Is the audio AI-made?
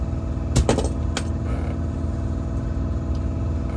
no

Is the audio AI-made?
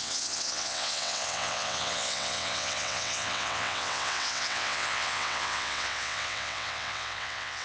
yes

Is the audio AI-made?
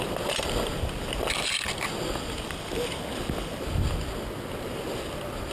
no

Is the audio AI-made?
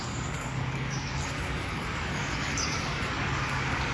yes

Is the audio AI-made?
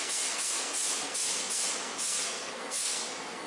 yes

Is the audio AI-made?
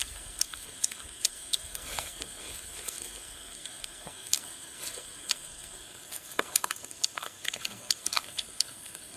yes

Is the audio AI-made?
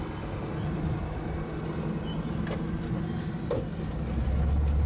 no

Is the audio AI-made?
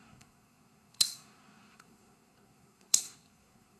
yes